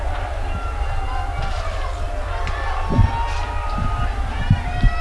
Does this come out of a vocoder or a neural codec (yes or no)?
no